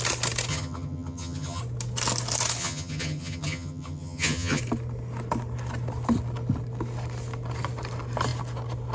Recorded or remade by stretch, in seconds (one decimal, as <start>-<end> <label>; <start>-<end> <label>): 0.0-0.5 recorded; 0.5-1.6 remade; 1.6-2.6 recorded; 2.6-4.6 remade; 4.6-8.9 recorded